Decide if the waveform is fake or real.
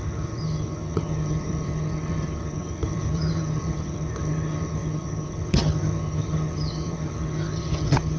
fake